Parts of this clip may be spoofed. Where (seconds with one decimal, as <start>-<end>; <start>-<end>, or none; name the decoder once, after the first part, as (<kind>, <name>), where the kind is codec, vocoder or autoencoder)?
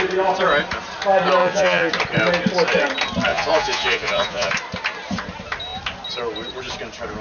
1.4-1.9 (vocoder, Vocos); 3.3-4.5